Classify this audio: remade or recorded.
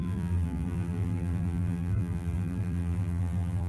remade